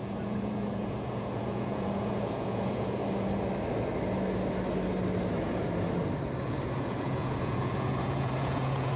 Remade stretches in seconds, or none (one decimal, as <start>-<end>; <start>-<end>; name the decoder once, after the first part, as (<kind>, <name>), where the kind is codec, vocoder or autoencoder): 0.0-3.0 (vocoder, Vocos); 6.4-9.0